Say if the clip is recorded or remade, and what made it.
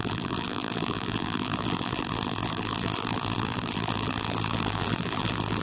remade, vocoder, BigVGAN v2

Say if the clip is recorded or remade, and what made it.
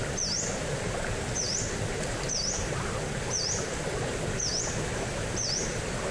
recorded